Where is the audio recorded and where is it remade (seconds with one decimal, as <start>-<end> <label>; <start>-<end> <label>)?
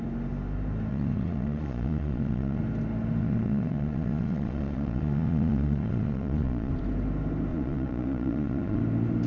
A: 0.0-0.9 recorded; 0.9-2.6 remade; 2.6-3.2 recorded; 3.2-6.7 remade; 6.7-7.5 recorded; 7.5-8.8 remade; 8.8-9.3 recorded